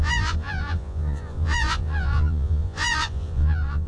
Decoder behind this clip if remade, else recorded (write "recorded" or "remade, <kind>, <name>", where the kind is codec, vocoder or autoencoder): remade, vocoder, Vocos